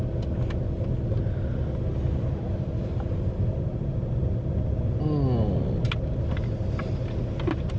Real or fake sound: real